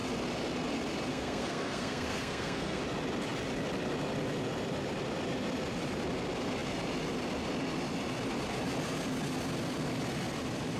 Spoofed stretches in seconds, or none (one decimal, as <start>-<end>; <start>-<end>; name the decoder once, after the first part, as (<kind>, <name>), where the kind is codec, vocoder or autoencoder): 1.1-2.8 (codec, SNAC)